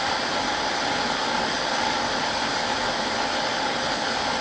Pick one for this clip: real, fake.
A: real